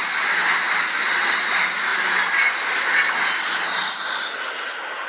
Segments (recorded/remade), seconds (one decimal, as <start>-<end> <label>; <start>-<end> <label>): 0.0-5.1 recorded